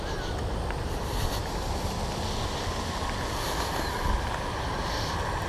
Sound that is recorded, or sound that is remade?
recorded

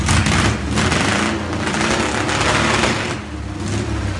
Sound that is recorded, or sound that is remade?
recorded